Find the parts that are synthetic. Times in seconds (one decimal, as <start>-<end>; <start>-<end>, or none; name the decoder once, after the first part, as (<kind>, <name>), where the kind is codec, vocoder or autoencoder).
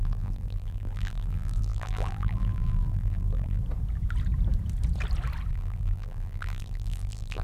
0.0-3.6 (vocoder, BigVGAN v2); 5.5-7.4